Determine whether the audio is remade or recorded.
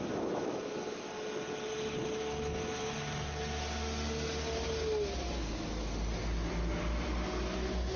recorded